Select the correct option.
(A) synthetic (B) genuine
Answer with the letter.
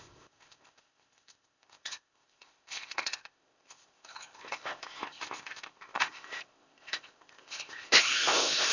A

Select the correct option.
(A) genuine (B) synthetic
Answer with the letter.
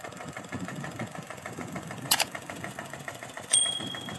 B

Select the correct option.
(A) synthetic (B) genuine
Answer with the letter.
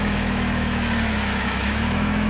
A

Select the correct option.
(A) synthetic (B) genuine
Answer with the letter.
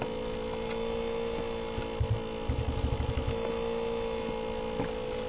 B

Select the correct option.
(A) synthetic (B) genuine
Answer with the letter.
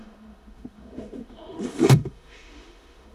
A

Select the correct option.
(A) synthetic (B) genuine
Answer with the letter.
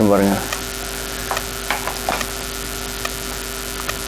B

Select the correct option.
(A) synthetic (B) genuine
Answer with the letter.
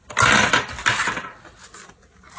B